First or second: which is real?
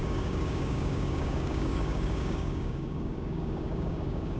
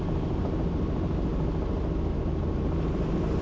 second